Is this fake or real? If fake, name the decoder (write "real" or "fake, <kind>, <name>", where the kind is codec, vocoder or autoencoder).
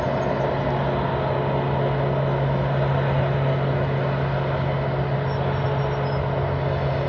real